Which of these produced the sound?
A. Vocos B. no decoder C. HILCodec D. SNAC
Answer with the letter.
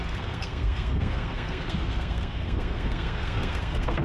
D